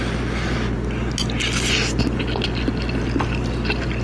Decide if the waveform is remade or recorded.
recorded